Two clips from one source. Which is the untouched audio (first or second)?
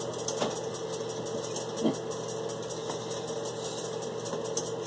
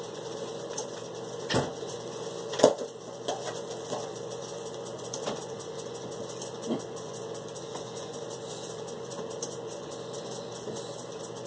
first